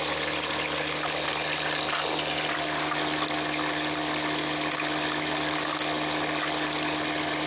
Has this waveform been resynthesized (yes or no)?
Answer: no